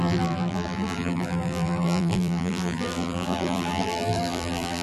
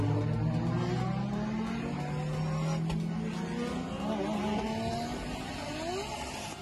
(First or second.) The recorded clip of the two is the second